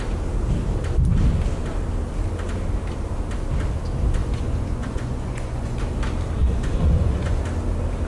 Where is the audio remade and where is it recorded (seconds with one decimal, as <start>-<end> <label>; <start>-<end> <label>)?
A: 0.0-4.2 recorded; 4.2-5.8 remade; 5.8-6.4 recorded; 6.4-7.4 remade; 7.4-8.1 recorded